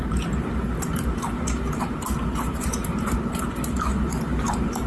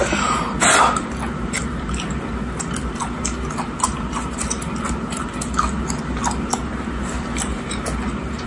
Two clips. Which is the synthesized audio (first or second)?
first